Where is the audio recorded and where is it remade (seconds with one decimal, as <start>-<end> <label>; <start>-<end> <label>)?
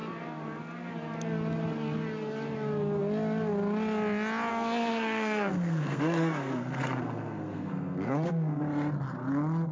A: 0.0-4.5 recorded; 4.5-8.6 remade; 8.6-9.7 recorded